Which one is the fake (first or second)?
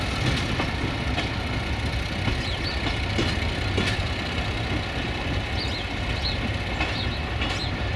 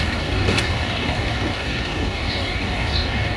second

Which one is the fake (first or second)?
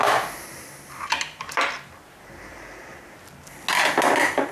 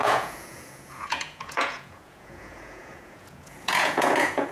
second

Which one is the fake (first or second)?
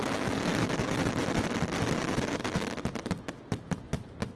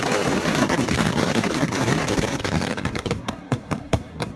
second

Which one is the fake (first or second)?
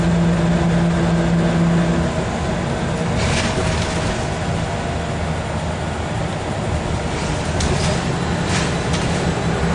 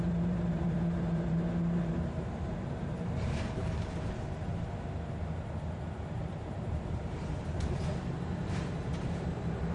second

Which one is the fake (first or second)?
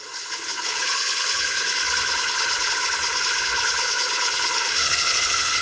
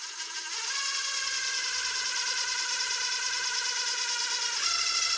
first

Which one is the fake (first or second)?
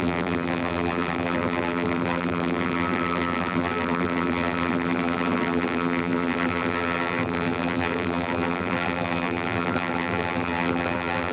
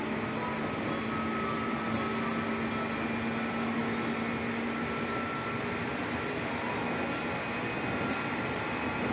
first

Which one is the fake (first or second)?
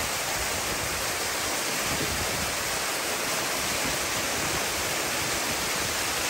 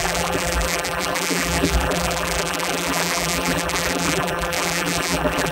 second